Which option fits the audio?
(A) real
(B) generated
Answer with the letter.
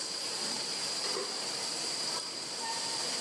B